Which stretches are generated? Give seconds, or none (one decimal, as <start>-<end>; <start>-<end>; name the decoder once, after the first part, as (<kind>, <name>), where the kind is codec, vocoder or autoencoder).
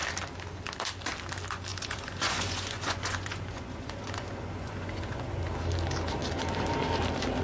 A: 1.7-5.4 (vocoder, Vocos)